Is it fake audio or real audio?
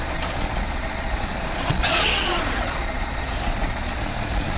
fake